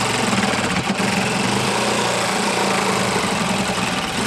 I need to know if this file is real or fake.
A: real